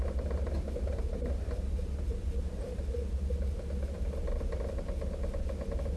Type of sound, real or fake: real